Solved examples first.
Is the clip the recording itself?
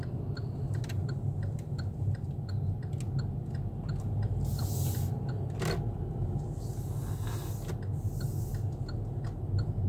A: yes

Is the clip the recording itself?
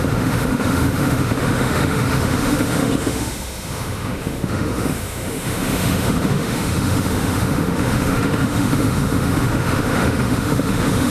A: no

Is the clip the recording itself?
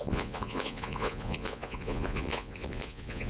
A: no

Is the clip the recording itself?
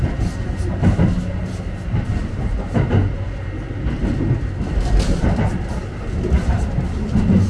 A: yes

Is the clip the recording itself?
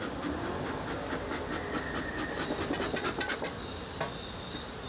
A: yes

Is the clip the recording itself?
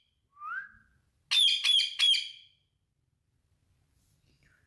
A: yes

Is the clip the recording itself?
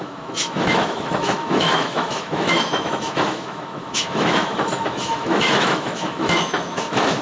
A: no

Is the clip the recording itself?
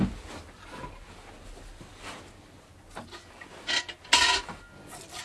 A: yes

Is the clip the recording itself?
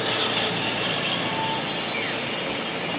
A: yes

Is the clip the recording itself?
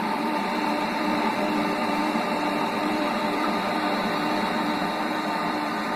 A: no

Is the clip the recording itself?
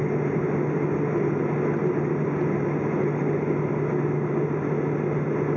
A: yes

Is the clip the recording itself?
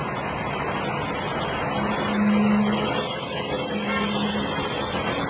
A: yes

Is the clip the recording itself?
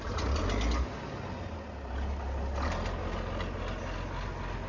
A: yes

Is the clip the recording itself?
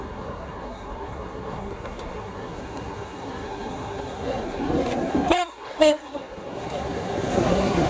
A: no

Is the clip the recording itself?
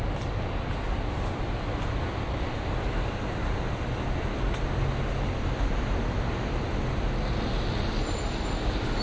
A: yes